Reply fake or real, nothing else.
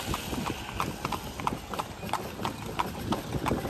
real